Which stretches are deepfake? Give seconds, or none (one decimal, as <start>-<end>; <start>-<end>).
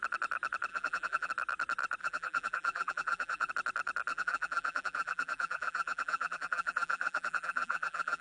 0.7-1.3; 2.0-3.5; 4.1-8.2